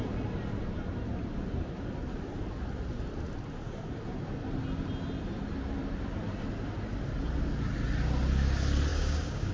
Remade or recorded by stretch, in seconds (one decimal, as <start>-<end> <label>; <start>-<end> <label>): 0.0-8.9 recorded; 8.9-9.5 remade